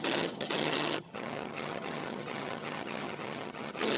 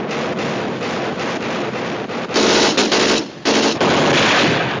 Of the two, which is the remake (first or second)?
first